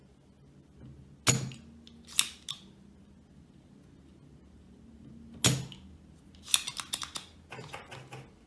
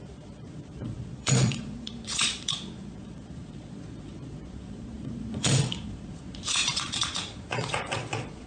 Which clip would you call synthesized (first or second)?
second